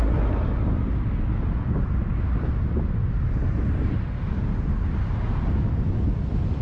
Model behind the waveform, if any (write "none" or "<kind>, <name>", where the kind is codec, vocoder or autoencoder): none